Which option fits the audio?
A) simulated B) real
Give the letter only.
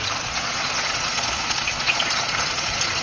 A